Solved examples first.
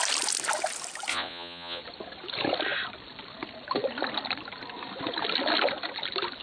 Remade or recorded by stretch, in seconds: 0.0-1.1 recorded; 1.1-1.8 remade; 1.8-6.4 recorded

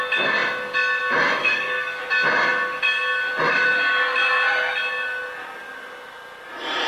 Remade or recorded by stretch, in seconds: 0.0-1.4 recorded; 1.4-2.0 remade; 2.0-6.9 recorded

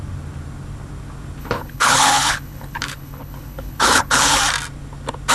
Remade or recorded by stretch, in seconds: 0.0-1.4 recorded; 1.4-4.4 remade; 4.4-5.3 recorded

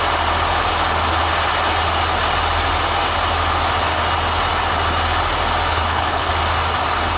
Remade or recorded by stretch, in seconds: 0.0-5.7 recorded; 5.7-6.3 remade; 6.3-7.2 recorded

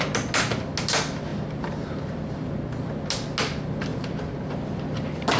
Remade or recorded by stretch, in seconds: 0.0-1.3 recorded; 1.3-2.5 remade; 2.5-3.9 recorded; 3.9-4.5 remade; 4.5-5.4 recorded

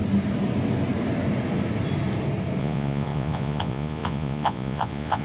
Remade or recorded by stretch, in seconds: 0.0-2.6 recorded; 2.6-5.2 remade

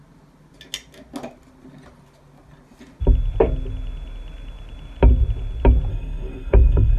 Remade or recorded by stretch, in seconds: 0.0-5.9 recorded; 5.9-7.0 remade